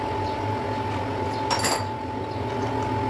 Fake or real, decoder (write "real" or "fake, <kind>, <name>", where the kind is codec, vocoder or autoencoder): real